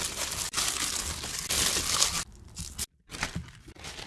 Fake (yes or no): no